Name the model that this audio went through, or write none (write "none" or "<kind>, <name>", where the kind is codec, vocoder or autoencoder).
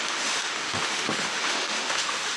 autoencoder, DAC-VAE